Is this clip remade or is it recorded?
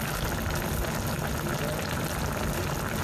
recorded